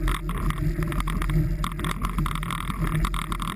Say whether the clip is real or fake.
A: real